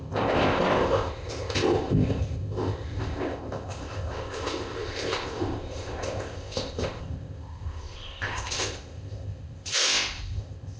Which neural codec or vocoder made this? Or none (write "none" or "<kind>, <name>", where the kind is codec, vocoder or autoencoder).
codec, ZipCodec